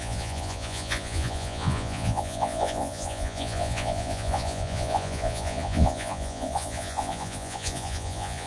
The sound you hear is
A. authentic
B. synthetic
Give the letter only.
B